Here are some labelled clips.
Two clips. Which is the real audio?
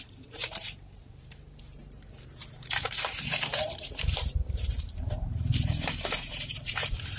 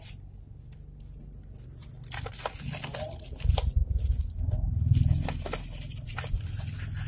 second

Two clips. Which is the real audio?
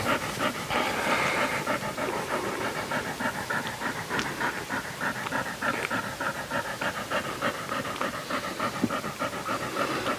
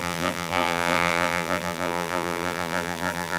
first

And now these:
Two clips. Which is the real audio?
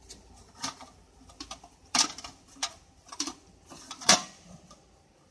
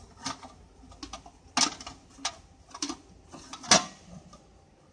second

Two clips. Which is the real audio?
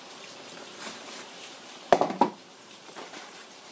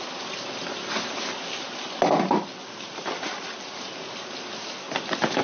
second